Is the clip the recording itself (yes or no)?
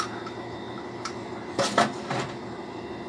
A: no